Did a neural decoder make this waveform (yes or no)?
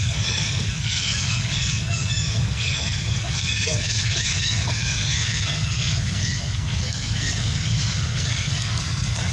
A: yes